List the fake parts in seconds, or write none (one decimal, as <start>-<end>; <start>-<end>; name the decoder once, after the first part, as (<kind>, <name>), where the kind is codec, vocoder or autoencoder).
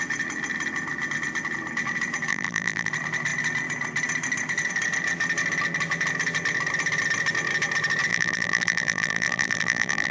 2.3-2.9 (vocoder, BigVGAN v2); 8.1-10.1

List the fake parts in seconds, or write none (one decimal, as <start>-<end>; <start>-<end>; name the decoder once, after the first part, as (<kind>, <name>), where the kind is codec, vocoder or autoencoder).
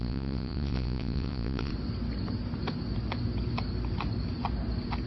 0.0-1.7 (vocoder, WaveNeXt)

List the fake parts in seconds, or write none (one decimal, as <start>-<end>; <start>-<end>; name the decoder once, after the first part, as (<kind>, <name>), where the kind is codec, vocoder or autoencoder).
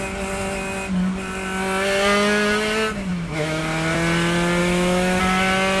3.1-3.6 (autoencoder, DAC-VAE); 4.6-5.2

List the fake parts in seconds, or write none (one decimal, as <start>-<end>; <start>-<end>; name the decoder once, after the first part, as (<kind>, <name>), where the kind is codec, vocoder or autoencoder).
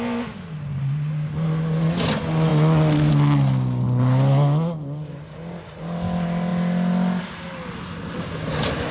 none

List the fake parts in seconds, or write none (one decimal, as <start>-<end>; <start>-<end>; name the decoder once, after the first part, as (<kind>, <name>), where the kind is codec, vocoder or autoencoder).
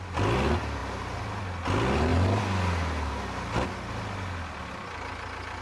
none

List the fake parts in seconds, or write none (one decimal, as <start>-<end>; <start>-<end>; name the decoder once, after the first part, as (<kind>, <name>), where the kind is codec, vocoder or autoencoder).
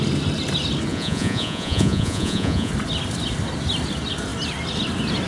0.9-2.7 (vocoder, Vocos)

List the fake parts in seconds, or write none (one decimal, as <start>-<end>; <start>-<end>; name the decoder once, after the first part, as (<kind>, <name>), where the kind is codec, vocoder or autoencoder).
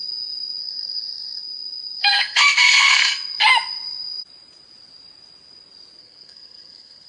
0.6-1.4 (codec, SNAC); 2.0-3.1; 6.0-7.1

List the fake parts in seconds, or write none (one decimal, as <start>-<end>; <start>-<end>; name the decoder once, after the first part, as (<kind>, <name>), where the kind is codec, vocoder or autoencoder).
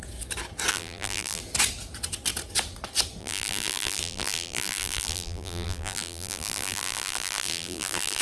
0.7-1.4 (vocoder, BigVGAN v2); 3.2-8.2